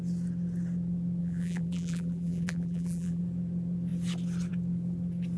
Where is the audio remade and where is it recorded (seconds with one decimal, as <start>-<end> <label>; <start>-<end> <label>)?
0.0-1.2 recorded; 1.2-3.2 remade; 3.2-5.4 recorded